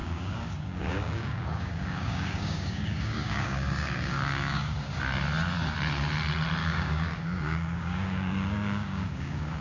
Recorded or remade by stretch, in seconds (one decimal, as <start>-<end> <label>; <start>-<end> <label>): 0.0-5.0 remade; 5.0-6.6 recorded; 6.6-9.6 remade